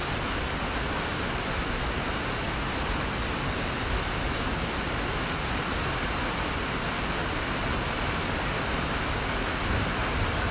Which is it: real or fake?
real